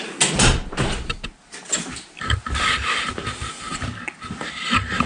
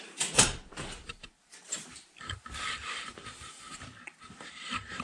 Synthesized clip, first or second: second